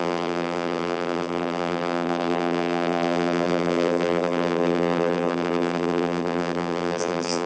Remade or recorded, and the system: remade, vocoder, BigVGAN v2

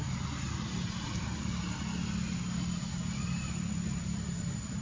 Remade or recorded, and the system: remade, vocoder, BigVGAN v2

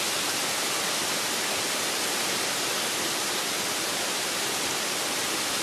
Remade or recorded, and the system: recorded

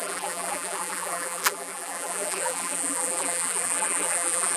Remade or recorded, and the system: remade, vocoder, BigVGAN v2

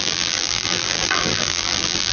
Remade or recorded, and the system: remade, vocoder, BigVGAN v2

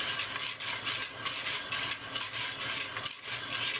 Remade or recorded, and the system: recorded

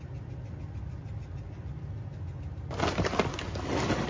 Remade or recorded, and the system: recorded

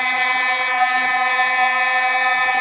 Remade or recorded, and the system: remade, vocoder, BigVGAN v2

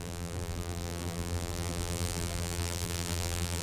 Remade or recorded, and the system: remade, vocoder, BigVGAN v2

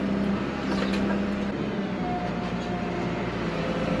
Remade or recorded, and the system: recorded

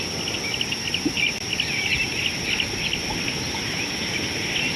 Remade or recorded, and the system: remade, vocoder, BigVGAN v2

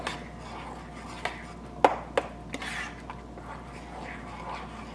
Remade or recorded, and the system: recorded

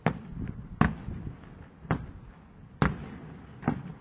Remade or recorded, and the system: recorded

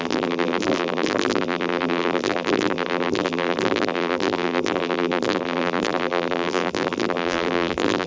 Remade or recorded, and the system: remade, vocoder, BigVGAN v2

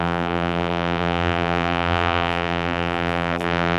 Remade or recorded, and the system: remade, vocoder, BigVGAN v2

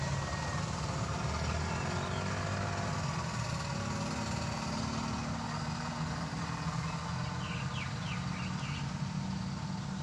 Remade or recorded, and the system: recorded